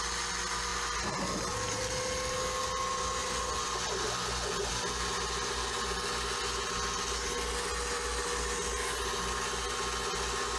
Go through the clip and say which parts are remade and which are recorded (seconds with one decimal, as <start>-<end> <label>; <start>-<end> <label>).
0.0-10.6 recorded

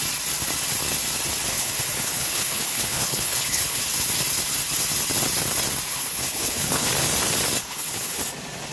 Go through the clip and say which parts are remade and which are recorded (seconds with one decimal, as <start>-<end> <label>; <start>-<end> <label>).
0.0-1.5 recorded; 1.5-3.8 remade; 3.8-5.9 recorded; 5.9-6.9 remade; 6.9-7.6 recorded; 7.6-8.2 remade; 8.2-8.7 recorded

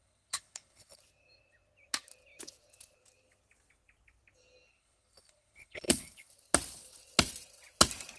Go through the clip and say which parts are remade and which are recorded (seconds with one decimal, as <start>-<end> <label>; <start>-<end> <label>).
0.0-1.0 remade; 1.0-4.7 recorded; 4.7-6.3 remade; 6.3-8.2 recorded

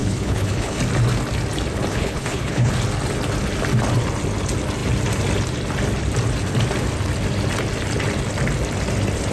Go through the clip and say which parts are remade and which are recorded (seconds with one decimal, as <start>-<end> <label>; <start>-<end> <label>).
0.0-0.8 remade; 0.8-1.9 recorded; 1.9-2.7 remade; 2.7-9.3 recorded

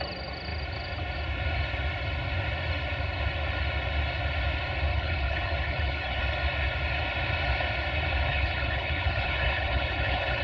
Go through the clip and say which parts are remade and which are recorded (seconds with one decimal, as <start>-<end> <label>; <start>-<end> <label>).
0.0-4.9 recorded; 4.9-6.2 remade; 6.2-8.3 recorded; 8.3-10.4 remade